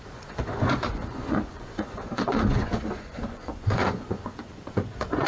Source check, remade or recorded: remade